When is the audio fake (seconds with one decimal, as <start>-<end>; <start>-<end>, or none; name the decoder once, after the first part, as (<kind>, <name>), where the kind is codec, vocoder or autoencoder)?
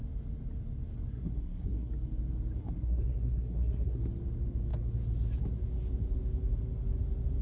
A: 1.1-1.9 (codec, SNAC); 2.6-4.0